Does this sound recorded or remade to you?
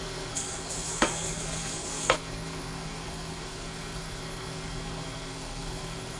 remade